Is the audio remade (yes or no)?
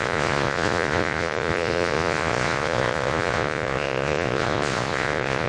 yes